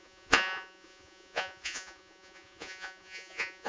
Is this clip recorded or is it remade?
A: remade